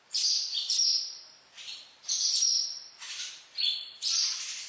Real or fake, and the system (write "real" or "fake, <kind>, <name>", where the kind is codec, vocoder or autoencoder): fake, vocoder, BigVGAN v2